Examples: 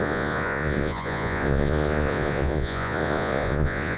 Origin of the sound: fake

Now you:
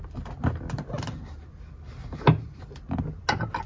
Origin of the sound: real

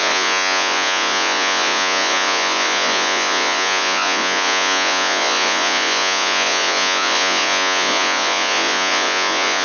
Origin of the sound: fake